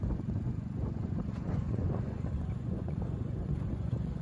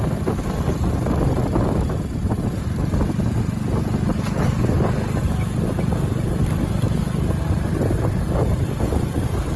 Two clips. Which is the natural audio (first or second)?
second